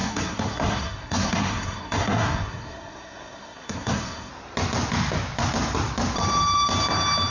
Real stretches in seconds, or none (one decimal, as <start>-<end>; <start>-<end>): 4.3-7.3